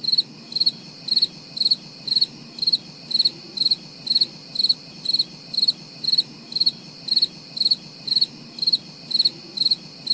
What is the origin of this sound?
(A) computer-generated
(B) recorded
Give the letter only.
B